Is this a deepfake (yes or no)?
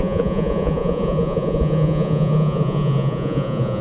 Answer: yes